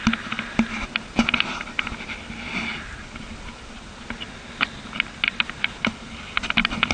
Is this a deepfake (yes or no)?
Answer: no